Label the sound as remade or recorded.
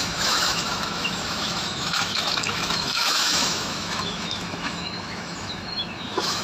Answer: remade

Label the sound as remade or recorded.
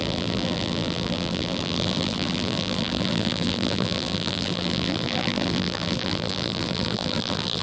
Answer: remade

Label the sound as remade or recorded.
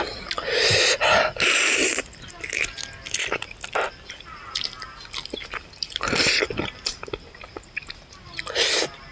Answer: recorded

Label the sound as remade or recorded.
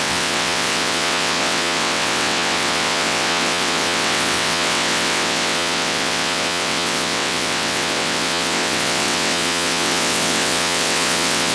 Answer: remade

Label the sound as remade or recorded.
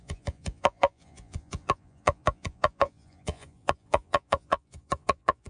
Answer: remade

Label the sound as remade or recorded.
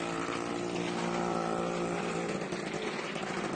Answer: recorded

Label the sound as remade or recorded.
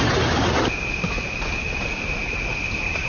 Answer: recorded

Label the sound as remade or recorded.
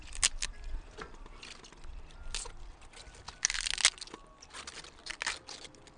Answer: recorded